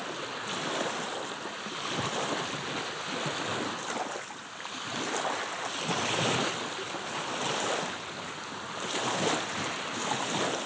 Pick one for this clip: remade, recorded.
recorded